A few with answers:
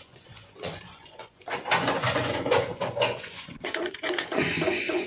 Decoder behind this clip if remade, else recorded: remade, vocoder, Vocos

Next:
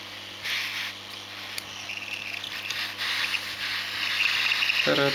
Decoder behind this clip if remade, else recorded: recorded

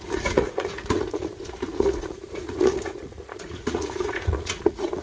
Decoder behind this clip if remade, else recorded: remade, vocoder, Vocos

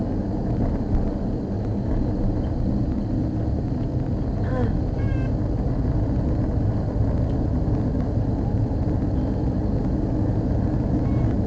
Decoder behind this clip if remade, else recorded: recorded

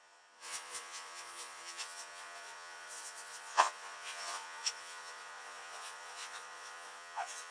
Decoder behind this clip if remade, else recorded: remade, vocoder, Vocos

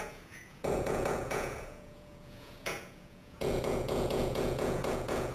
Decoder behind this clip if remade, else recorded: remade, vocoder, Vocos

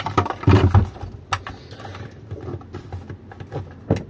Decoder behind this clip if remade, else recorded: recorded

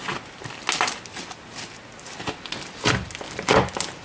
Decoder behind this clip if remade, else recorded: recorded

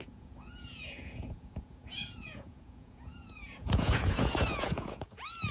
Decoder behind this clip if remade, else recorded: remade, vocoder, Vocos